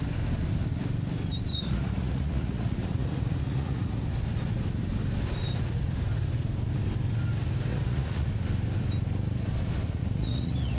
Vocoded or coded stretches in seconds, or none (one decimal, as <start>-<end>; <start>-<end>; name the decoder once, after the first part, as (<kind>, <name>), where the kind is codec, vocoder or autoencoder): 1.5-4.0 (vocoder, Vocos); 7.7-8.3; 10.0-10.8